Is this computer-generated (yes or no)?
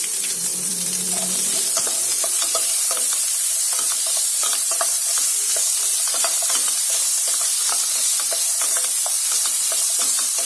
yes